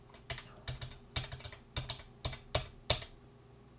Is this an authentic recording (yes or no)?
yes